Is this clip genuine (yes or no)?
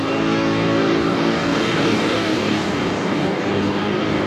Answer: no